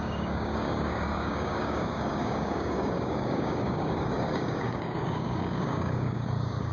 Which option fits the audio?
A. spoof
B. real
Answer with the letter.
A